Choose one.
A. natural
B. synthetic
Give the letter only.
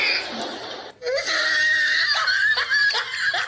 A